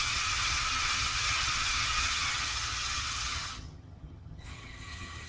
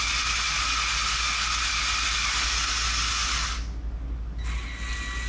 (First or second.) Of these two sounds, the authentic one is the second